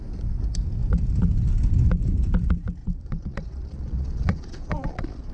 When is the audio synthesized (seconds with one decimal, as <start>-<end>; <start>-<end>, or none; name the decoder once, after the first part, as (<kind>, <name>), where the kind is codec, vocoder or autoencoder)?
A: 2.8-5.3 (vocoder, Vocos)